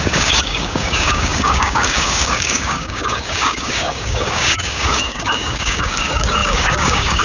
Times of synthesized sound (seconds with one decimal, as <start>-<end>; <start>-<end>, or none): 0.0-7.2